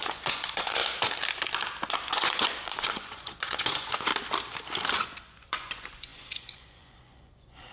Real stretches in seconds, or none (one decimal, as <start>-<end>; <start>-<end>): 0.8-2.1; 4.1-5.2